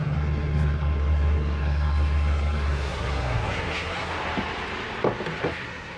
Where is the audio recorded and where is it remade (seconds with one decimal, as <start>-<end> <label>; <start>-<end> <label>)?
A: 0.0-4.1 remade; 4.1-5.4 recorded; 5.4-6.0 remade